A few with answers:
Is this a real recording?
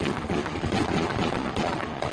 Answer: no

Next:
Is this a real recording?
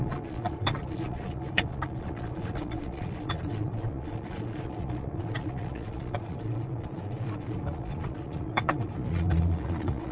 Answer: no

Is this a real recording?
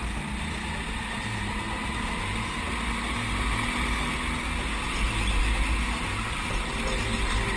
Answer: yes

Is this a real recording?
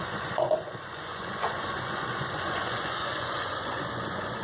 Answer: no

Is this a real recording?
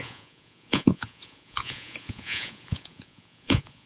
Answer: no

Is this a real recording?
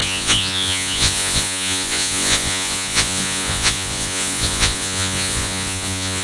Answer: no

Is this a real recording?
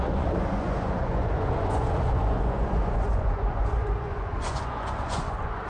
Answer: no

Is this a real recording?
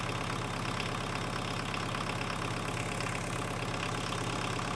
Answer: yes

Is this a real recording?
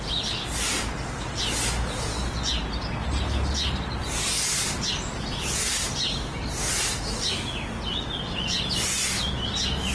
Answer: yes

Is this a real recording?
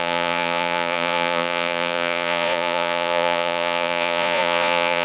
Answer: no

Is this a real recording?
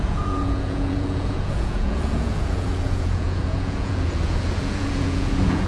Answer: no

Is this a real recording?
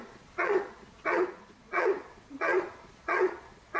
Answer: no